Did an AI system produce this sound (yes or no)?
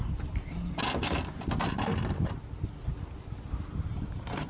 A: no